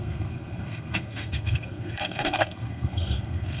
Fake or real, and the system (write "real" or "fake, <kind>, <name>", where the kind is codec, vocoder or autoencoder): fake, codec, SNAC